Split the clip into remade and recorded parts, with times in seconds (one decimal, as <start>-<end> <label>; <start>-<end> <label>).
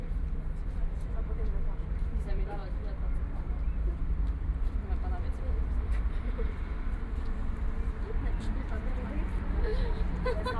0.0-2.6 remade; 2.6-3.2 recorded; 3.2-10.6 remade